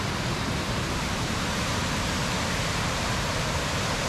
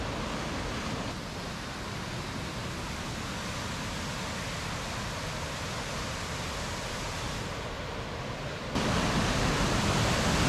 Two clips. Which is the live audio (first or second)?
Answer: second